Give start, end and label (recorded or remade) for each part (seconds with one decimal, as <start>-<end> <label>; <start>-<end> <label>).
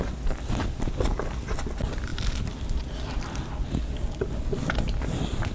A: 0.0-5.5 recorded